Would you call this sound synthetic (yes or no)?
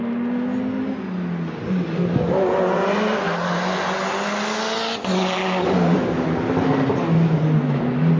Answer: no